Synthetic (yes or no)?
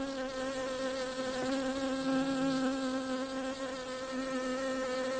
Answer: no